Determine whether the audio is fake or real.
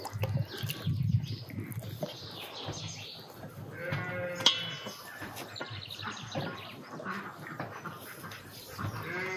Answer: real